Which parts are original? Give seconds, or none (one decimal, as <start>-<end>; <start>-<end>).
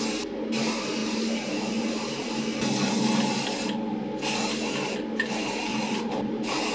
0.0-1.0; 2.3-5.7; 6.3-6.7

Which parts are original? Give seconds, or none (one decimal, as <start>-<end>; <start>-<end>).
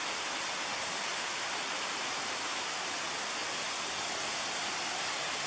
0.0-1.1; 2.9-5.5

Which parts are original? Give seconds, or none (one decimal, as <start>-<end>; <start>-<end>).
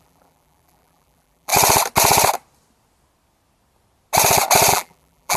1.5-4.7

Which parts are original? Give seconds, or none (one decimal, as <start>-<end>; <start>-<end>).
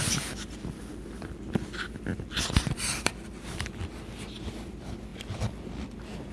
5.1-5.8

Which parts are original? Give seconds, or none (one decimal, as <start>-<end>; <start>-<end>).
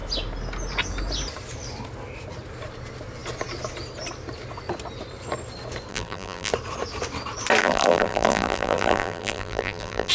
0.0-5.9; 6.5-7.6